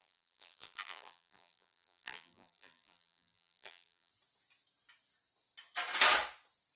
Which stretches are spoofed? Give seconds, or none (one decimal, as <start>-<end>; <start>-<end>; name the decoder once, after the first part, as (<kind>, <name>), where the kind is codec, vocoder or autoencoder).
0.0-4.1 (vocoder, BigVGAN v2)